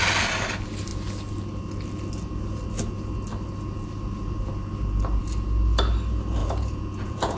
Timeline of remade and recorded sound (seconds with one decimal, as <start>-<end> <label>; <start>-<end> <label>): 0.0-6.4 recorded; 6.4-7.4 remade